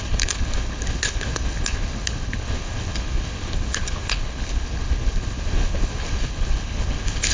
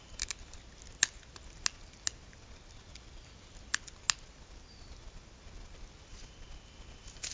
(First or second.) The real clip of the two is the second